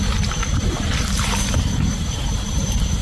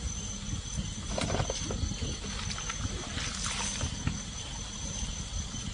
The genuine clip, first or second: second